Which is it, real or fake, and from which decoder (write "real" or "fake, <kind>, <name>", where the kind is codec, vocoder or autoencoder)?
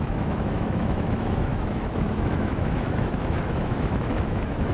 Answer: fake, autoencoder, DAC-VAE